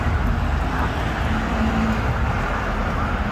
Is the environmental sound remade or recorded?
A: recorded